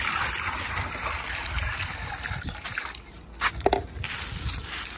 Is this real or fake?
real